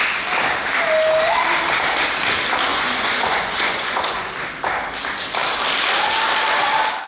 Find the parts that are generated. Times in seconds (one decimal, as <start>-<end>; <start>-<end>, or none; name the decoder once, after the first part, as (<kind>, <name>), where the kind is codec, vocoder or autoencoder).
2.7-4.3 (vocoder, Vocos)